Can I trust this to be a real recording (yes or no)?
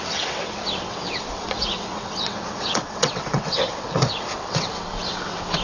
no